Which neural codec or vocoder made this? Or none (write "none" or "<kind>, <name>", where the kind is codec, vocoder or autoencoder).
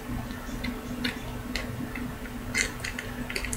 none